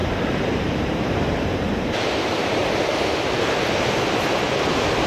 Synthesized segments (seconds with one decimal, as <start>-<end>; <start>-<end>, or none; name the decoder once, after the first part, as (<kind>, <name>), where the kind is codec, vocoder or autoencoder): 0.0-2.7 (vocoder, BigVGAN v2)